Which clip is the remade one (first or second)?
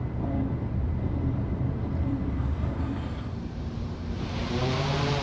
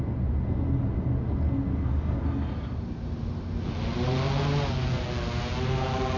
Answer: first